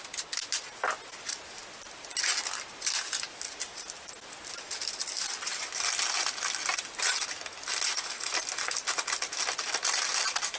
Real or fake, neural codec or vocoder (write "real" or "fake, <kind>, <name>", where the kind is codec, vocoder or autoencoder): real